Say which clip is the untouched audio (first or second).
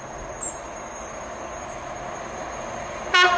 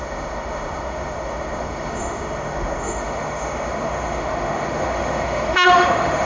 first